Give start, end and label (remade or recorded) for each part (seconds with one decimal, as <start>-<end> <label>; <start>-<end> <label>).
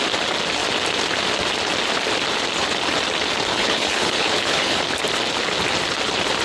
0.0-3.5 recorded; 3.5-4.8 remade; 4.8-6.4 recorded